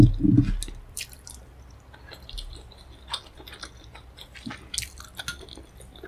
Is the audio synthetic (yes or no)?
no